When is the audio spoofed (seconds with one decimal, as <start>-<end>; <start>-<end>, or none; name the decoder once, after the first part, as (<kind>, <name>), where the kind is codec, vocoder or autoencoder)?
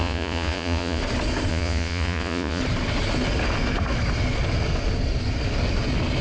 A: 0.0-1.0 (vocoder, Vocos); 1.5-2.6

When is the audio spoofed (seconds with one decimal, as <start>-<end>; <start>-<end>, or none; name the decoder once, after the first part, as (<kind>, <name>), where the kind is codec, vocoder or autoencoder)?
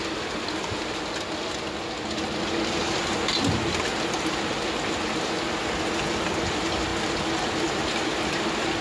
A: none